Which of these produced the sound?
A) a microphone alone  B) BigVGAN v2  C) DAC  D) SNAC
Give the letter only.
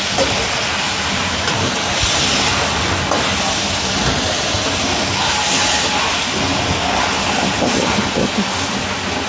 A